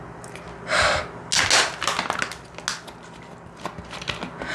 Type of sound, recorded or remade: recorded